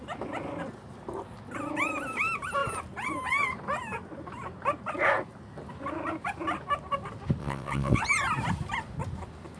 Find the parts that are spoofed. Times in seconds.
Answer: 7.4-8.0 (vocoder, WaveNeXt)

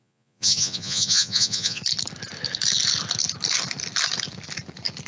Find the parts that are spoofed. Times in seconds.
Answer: 0.0-1.8 (vocoder, Vocos)

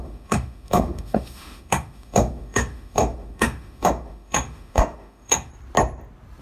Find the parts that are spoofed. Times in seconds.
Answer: 0.0-5.5 (autoencoder, DAC-VAE)